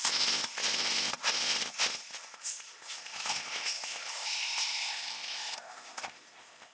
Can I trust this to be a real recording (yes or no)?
no